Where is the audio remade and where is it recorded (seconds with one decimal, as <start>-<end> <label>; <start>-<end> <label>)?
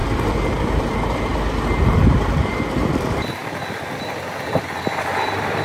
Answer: 0.0-1.3 remade; 1.3-2.0 recorded; 2.0-5.6 remade